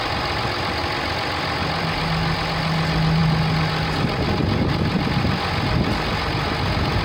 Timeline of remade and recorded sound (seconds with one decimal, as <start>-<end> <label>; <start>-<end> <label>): 0.0-7.0 recorded